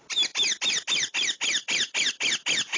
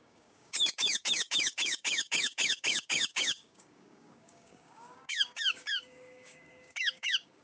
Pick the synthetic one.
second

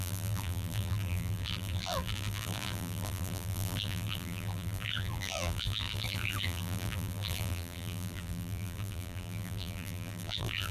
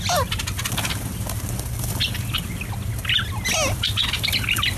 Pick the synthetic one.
first